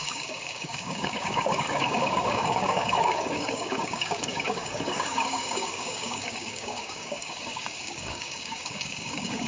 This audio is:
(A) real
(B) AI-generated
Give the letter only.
B